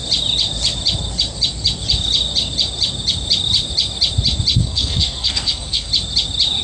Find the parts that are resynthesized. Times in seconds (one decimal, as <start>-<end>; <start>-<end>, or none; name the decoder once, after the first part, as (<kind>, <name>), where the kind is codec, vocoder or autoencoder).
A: 4.6-5.9 (codec, SNAC)